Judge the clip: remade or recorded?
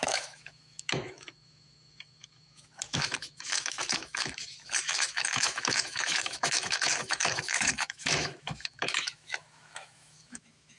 remade